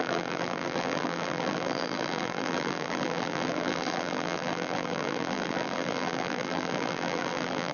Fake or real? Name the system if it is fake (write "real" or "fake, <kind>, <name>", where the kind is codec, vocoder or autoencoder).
fake, vocoder, BigVGAN v2